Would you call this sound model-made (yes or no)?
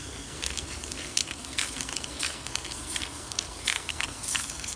yes